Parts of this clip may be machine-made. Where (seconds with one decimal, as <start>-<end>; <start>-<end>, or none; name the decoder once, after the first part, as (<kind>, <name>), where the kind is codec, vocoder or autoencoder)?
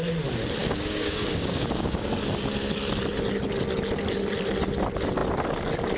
0.6-2.1 (codec, DAC)